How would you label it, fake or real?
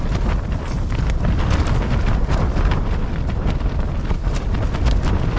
real